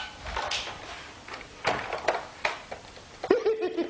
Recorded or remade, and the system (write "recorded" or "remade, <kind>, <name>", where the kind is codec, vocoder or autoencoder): remade, vocoder, BigVGAN v2